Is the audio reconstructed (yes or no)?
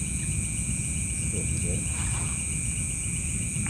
no